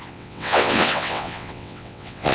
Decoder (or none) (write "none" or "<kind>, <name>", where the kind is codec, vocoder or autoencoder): vocoder, WaveNeXt